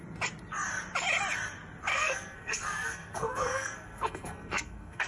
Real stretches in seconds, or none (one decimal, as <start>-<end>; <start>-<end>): 0.0-1.9